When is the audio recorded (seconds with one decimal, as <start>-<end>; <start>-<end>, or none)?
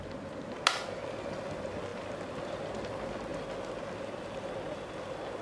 0.0-5.4